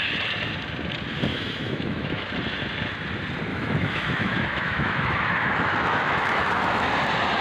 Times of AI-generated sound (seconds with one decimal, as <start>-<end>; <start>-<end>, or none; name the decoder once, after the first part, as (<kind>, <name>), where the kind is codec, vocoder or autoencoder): 1.3-2.3 (autoencoder, DAC-VAE); 3.5-6.9